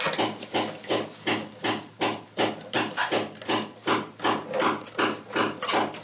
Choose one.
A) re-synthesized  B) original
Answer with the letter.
B